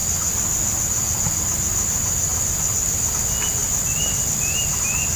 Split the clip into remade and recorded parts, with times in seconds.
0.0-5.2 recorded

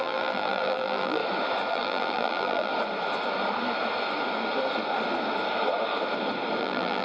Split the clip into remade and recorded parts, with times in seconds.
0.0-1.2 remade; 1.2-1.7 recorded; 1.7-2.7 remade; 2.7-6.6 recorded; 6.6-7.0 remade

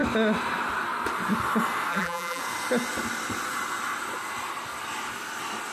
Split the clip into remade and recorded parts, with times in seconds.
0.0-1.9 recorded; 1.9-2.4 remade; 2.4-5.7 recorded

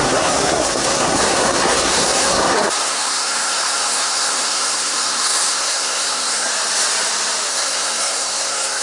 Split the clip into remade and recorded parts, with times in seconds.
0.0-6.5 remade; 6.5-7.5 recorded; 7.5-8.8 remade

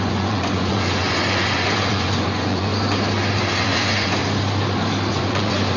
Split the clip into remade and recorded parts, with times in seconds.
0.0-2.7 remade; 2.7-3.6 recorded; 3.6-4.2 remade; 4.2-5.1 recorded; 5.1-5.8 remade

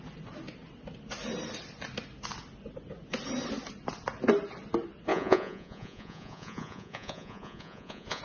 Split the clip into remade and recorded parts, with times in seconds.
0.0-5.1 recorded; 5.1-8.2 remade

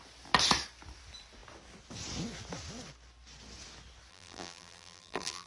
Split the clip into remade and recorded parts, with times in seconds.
0.0-4.1 recorded; 4.1-5.5 remade